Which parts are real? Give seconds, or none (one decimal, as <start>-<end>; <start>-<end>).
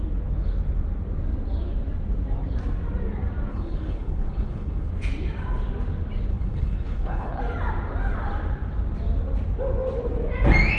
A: 0.0-3.5; 4.9-6.3; 7.4-10.8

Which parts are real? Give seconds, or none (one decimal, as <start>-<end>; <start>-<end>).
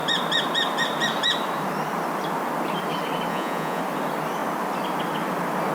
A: 0.0-3.3; 3.8-5.7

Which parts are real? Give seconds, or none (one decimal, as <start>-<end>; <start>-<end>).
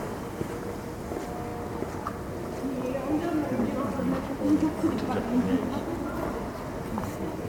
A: 0.0-7.5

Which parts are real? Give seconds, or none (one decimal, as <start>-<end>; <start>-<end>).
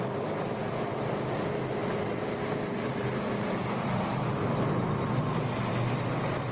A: 0.0-6.5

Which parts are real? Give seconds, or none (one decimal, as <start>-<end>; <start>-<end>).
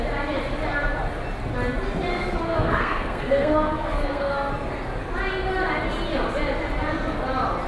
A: 0.0-2.1; 4.5-7.7